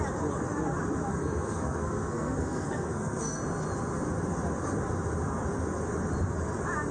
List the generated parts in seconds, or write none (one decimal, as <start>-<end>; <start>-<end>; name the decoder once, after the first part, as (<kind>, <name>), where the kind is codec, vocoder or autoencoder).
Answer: 1.1-3.4 (codec, SNAC)